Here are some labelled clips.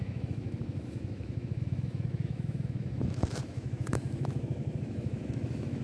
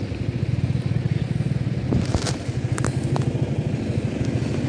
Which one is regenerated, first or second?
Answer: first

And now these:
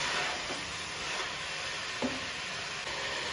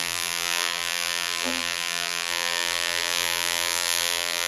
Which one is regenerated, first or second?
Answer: second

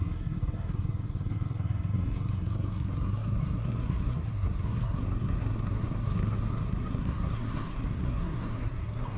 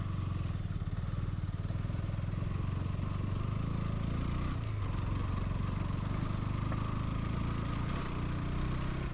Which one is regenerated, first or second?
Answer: first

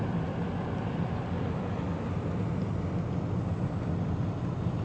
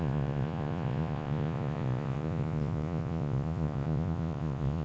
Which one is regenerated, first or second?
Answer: second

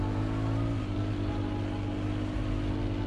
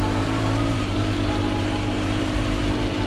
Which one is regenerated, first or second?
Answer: second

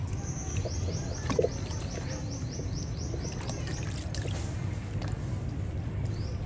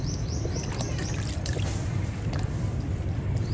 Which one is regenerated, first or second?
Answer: second